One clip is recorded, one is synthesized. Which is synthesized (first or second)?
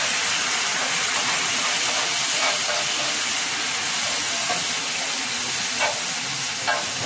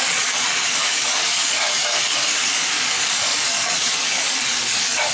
second